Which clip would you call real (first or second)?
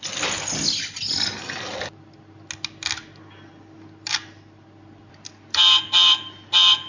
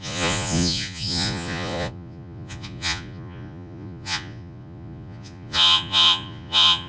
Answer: first